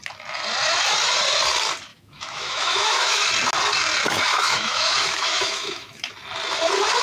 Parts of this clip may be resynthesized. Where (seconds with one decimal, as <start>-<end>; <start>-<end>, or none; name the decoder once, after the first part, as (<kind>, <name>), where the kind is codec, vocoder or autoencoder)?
1.9-3.3 (autoencoder, DAC-VAE); 4.3-6.1